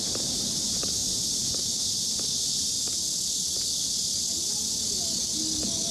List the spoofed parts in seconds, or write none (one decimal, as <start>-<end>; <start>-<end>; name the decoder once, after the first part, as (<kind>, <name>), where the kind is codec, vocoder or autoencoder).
1.0-2.1 (vocoder, BigVGAN v2)